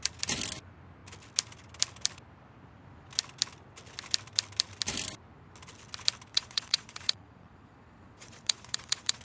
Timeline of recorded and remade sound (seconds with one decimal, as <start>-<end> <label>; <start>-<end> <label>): 0.0-6.3 recorded; 6.3-9.2 remade